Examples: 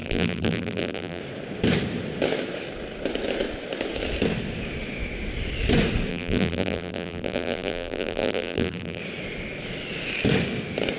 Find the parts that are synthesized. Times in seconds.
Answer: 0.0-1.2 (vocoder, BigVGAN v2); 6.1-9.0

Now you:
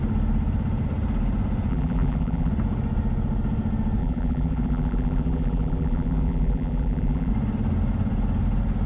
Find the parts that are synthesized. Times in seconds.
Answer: 1.7-2.5 (vocoder, BigVGAN v2); 4.0-7.3

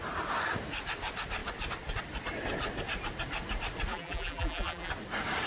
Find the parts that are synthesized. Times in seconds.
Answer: 3.9-4.9 (vocoder, BigVGAN v2)

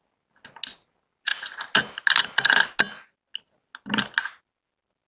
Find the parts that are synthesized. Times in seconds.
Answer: none

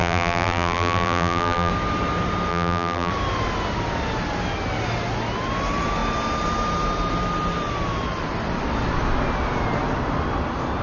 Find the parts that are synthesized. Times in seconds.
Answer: 0.0-1.7 (vocoder, BigVGAN v2); 2.5-3.1

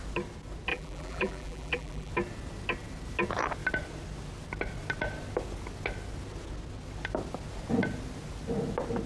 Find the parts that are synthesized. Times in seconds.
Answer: 0.7-2.1 (vocoder, BigVGAN v2)